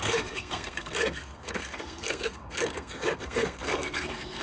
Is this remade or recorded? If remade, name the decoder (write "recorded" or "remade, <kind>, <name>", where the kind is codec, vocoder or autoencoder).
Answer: remade, codec, SNAC